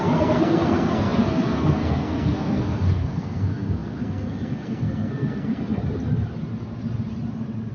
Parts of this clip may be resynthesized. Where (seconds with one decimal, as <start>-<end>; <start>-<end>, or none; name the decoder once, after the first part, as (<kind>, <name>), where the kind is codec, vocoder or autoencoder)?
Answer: 0.0-5.8 (codec, SNAC)